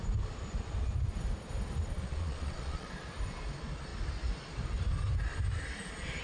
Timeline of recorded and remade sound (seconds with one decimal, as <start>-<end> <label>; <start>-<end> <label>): 0.0-2.0 recorded; 2.0-2.9 remade; 2.9-6.2 recorded